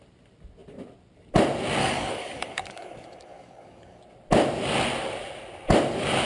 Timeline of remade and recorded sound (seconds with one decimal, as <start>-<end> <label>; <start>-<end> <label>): 0.0-1.8 recorded; 1.8-4.0 remade; 4.0-6.3 recorded